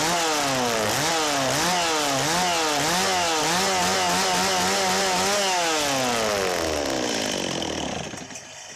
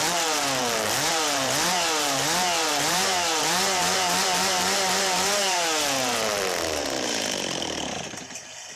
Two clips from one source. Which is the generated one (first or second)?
second